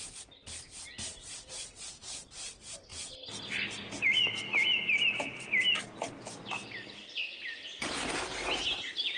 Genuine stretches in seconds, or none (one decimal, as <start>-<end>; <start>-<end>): 0.0-9.2